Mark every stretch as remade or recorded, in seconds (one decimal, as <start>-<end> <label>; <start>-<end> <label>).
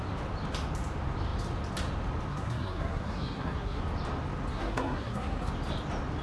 0.0-2.3 recorded; 2.3-3.8 remade; 3.8-4.5 recorded; 4.5-5.5 remade; 5.5-6.2 recorded